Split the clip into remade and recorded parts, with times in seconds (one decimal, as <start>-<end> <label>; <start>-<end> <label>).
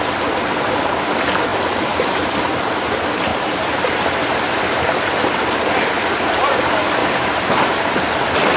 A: 0.0-1.5 recorded; 1.5-2.3 remade; 2.3-3.3 recorded; 3.3-4.1 remade; 4.1-7.0 recorded; 7.0-7.8 remade; 7.8-8.6 recorded